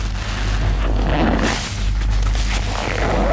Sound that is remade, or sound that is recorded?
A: recorded